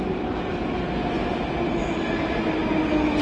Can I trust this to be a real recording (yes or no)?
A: yes